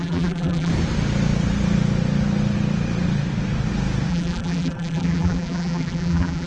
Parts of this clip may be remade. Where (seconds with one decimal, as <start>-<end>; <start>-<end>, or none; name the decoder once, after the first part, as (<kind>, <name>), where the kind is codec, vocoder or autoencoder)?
0.0-0.7 (vocoder, BigVGAN v2); 4.1-6.5